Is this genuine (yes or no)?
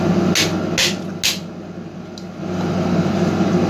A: yes